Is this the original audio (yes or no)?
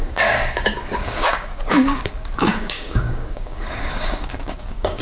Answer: no